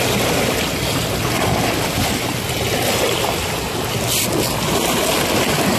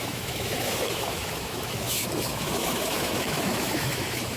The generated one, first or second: second